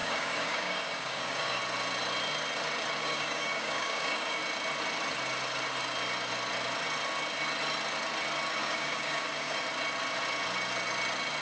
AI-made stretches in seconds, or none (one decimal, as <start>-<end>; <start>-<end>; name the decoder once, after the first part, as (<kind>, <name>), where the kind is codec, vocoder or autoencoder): 0.0-1.6 (codec, DAC); 3.0-4.4; 8.6-9.6